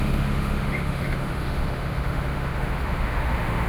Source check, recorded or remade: remade